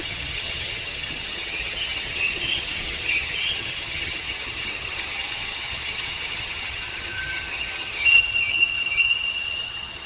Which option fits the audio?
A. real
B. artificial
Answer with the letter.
B